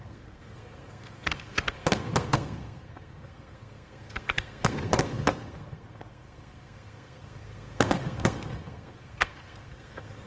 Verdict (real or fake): fake